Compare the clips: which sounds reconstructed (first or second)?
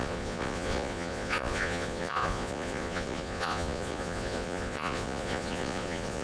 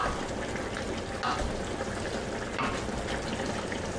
first